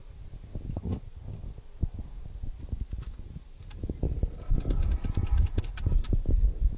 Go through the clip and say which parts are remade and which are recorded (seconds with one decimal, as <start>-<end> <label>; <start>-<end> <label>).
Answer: 0.0-6.8 recorded